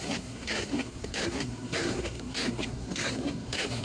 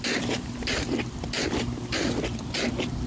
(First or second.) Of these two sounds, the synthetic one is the first